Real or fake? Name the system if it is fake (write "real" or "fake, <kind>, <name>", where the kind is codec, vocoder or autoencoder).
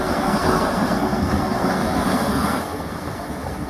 fake, codec, SNAC